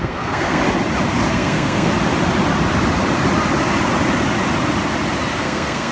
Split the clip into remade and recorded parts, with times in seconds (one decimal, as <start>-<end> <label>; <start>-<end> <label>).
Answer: 0.0-0.6 remade; 0.6-1.3 recorded; 1.3-1.9 remade; 1.9-5.4 recorded; 5.4-5.9 remade